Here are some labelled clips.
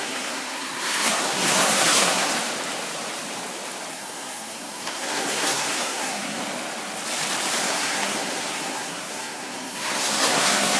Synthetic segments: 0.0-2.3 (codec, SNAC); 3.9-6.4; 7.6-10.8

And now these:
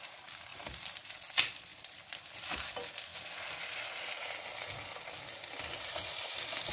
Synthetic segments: 1.7-2.5 (vocoder, BigVGAN v2)

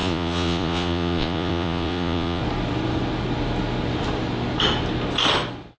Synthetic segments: 0.0-2.4 (vocoder, Vocos)

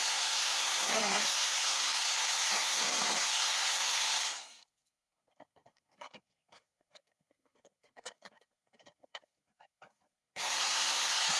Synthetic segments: 0.0-11.4 (codec, SNAC)

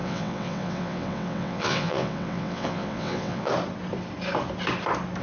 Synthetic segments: 0.0-3.5 (vocoder, WaveNeXt)

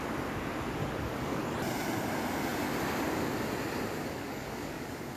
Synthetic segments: 0.8-1.4 (codec, DAC); 4.0-5.2

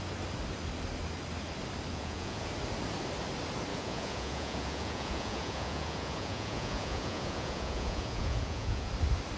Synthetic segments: 1.9-2.5 (vocoder, Vocos); 3.7-8.9

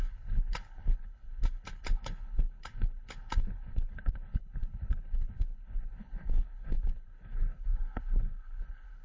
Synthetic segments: 0.0-9.0 (codec, HILCodec)